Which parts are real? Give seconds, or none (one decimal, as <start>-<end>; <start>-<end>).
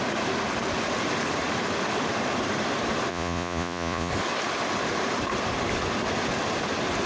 0.0-3.1; 4.1-7.1